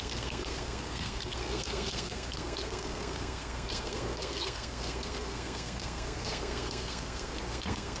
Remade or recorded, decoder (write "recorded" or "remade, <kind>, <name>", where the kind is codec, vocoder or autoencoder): remade, codec, SNAC